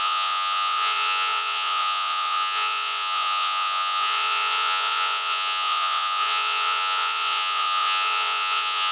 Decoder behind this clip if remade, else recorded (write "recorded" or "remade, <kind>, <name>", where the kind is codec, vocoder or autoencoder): remade, vocoder, Vocos